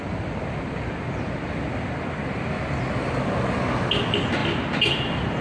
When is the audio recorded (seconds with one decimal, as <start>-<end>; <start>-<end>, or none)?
0.0-5.4